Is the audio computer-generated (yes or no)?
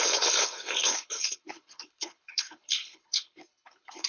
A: yes